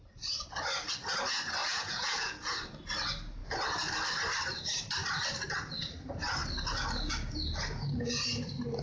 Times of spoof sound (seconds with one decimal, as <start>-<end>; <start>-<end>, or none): 1.6-2.6